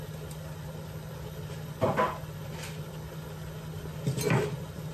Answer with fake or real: real